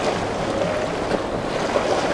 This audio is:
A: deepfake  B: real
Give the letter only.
B